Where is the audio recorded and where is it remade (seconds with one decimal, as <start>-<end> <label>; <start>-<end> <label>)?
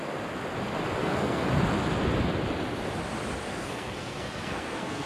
0.0-1.0 recorded; 1.0-1.5 remade; 1.5-3.5 recorded; 3.5-5.1 remade